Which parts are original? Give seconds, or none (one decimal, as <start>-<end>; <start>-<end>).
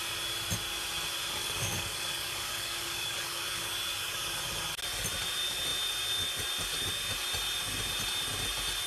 0.0-1.4; 4.8-8.9